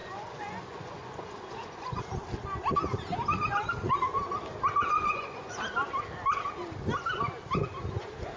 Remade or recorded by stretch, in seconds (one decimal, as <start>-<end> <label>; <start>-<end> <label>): 0.0-2.0 remade; 2.0-4.8 recorded; 4.8-5.6 remade; 5.6-8.4 recorded